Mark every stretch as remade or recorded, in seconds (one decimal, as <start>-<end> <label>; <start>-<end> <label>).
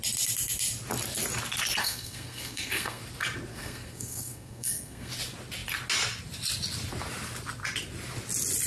0.0-1.8 recorded; 1.8-3.0 remade; 3.0-3.5 recorded; 3.5-5.1 remade; 5.1-8.7 recorded